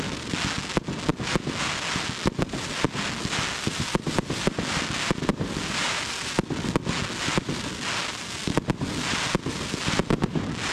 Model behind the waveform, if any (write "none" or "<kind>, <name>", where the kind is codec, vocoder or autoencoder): none